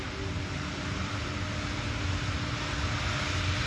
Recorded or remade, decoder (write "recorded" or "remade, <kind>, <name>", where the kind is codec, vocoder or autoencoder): recorded